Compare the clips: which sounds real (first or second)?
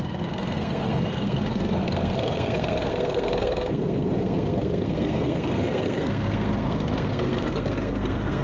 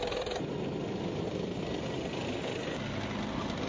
second